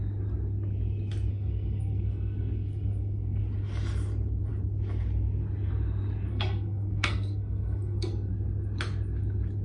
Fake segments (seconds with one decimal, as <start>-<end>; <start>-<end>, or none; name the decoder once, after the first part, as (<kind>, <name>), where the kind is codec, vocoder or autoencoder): 1.3-3.4 (codec, SNAC); 6.3-8.3